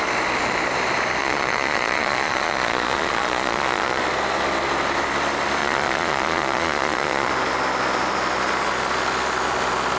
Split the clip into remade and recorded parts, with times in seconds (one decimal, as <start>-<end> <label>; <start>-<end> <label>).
0.0-1.2 recorded; 1.2-4.0 remade; 4.0-5.6 recorded; 5.6-7.3 remade; 7.3-10.0 recorded